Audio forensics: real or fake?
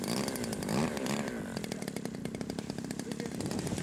real